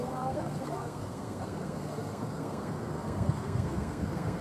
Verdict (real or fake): fake